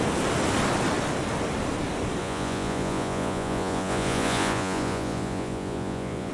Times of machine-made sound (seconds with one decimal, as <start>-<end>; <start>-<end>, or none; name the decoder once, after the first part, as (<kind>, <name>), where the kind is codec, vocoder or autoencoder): 2.2-6.3 (vocoder, Vocos)